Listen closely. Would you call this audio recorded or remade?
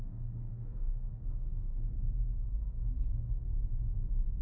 remade